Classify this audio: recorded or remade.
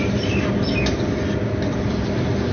recorded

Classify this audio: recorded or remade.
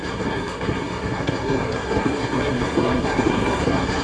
remade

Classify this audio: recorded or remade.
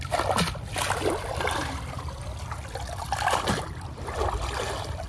recorded